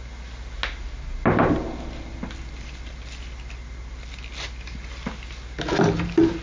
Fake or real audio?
real